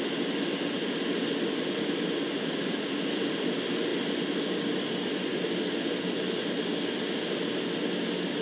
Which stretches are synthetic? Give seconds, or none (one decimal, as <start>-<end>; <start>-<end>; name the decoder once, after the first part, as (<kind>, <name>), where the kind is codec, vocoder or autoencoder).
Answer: none